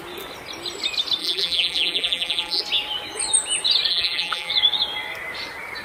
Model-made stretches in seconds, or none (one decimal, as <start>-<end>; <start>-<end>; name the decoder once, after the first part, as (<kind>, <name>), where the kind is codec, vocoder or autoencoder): 1.2-2.6 (vocoder, BigVGAN v2); 3.9-4.5